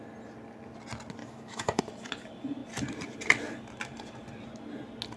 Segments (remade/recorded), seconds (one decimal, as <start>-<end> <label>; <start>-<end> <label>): 0.0-1.2 recorded; 1.2-1.8 remade; 1.8-5.2 recorded